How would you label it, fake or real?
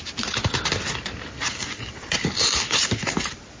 real